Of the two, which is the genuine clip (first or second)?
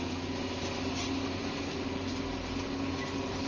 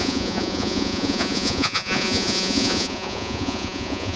first